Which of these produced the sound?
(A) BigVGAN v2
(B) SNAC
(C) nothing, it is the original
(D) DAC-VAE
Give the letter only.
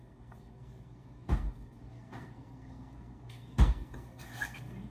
B